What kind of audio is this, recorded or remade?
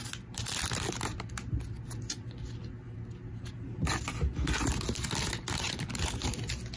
recorded